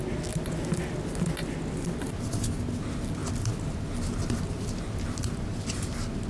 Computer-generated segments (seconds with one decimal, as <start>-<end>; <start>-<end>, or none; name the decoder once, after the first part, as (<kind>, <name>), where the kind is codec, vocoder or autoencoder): none